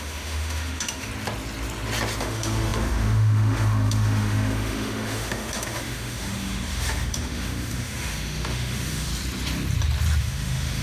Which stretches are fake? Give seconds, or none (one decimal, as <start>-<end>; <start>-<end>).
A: 0.0-1.1; 2.2-9.1; 10.2-10.8